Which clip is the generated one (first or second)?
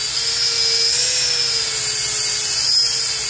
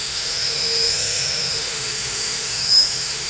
second